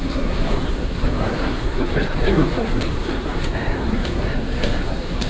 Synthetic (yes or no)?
yes